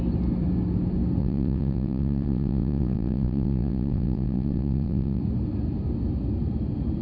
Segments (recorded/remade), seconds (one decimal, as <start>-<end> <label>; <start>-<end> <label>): 0.0-1.2 recorded; 1.2-5.2 remade; 5.2-7.0 recorded